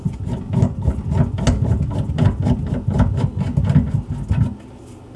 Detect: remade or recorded recorded